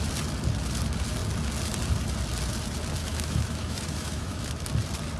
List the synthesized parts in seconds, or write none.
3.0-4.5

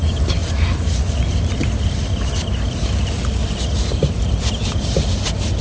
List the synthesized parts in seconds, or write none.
none

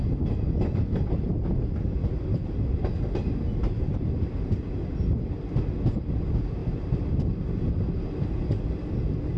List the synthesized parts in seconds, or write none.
none

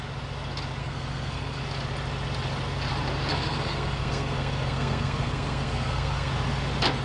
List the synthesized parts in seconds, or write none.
0.8-1.6; 3.3-6.3

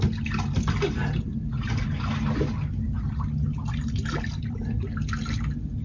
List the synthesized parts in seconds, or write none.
none